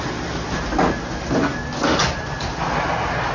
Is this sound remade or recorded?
recorded